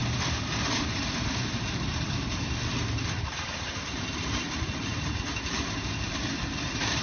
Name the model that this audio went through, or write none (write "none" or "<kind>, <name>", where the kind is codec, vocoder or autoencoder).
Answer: vocoder, BigVGAN v2